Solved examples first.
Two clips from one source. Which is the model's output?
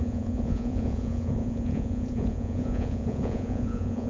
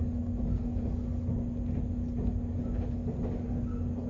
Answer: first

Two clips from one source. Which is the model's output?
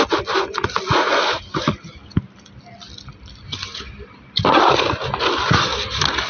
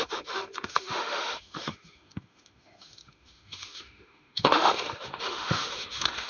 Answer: second